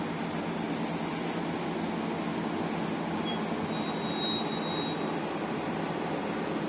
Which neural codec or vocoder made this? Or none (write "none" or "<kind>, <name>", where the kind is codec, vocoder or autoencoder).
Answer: none